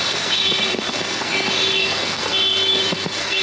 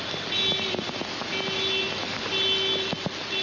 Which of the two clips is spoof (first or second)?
first